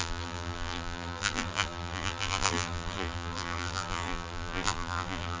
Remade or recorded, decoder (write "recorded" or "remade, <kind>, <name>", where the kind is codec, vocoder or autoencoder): remade, vocoder, BigVGAN v2